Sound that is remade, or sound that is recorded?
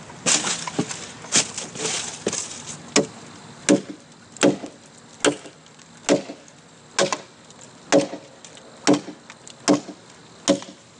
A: recorded